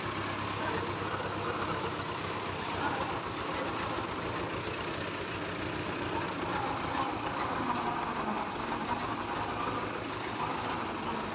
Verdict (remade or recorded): recorded